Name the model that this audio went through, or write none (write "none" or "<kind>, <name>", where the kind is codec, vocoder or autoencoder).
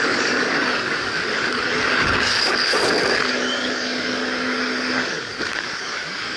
codec, DAC